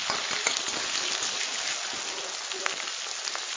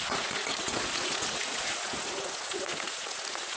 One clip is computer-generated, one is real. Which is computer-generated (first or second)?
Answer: second